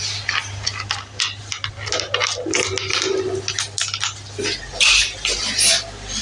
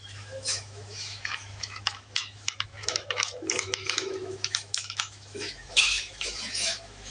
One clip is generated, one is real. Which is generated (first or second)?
second